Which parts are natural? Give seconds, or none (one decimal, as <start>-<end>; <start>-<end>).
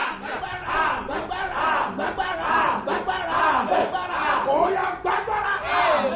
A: 4.8-6.2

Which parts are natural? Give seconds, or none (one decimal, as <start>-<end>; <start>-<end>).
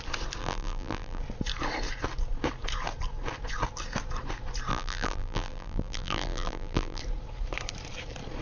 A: 0.0-0.4; 1.2-4.7; 7.0-8.4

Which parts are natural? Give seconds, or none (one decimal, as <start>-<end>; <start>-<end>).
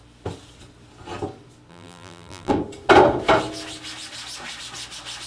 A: 0.0-1.7; 2.5-5.3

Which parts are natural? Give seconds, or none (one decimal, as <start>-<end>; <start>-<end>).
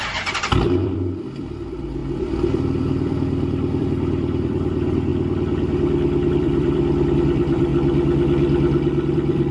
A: 5.1-6.3; 7.7-9.1